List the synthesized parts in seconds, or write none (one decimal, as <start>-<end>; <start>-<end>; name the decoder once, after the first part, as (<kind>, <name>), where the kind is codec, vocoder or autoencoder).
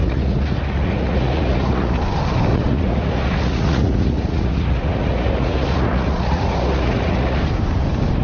0.0-2.0 (vocoder, Vocos); 2.5-7.4